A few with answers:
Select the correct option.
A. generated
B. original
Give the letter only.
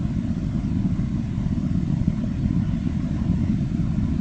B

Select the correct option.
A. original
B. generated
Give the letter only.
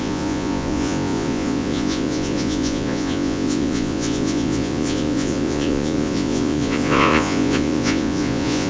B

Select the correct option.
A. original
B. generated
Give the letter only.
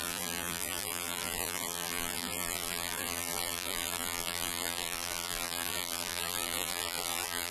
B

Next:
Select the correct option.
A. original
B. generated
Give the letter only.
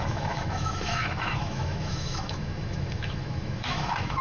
B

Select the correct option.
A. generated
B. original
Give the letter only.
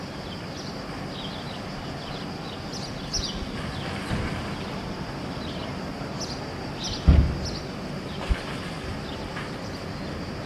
B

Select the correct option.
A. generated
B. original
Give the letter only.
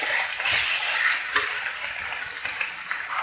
B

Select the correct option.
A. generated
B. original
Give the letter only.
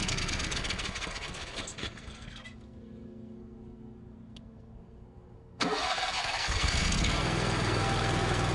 A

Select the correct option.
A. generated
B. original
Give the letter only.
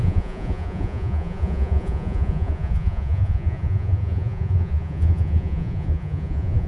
A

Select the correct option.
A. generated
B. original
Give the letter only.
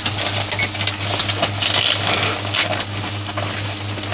B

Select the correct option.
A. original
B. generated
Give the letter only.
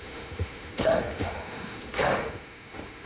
B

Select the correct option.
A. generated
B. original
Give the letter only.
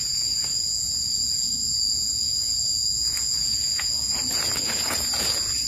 A